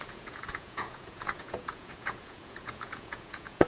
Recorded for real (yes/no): no